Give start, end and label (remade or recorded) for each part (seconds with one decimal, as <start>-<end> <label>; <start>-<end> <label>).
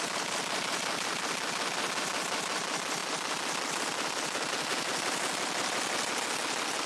0.0-6.9 recorded